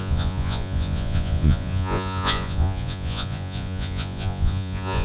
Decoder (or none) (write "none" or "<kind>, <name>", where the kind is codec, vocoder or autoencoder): vocoder, Vocos